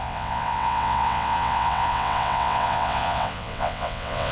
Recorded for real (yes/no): no